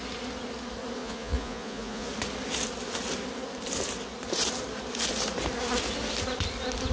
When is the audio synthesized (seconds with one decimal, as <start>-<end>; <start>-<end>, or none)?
1.0-2.1